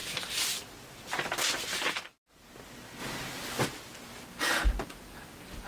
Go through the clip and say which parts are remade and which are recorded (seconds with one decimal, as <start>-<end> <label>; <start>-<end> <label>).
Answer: 0.0-5.7 recorded